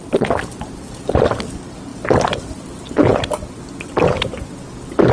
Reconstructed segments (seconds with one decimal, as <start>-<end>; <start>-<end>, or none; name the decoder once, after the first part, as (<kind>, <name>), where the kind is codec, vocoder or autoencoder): none